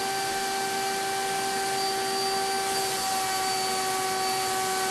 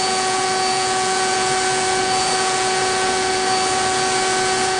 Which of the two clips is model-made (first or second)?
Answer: second